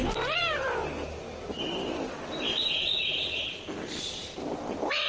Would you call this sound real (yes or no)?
no